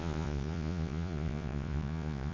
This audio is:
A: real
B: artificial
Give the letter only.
B